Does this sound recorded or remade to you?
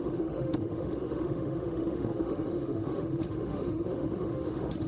remade